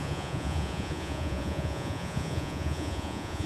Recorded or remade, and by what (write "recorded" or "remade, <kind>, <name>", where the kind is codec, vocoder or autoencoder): remade, vocoder, Vocos